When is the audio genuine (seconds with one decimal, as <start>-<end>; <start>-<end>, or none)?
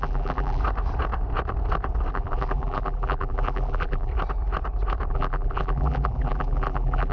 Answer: 0.6-2.1; 4.1-5.1